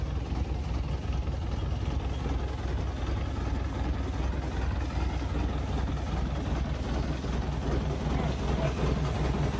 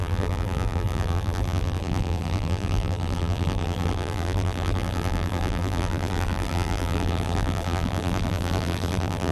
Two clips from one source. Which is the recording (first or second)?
first